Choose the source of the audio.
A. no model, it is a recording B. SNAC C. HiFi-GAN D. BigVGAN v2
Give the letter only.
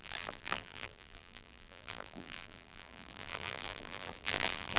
D